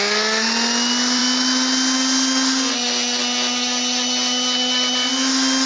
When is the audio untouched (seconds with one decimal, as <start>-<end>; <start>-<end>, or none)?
0.0-5.7